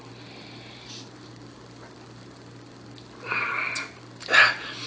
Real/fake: real